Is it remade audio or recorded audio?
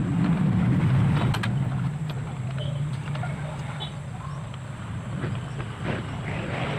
recorded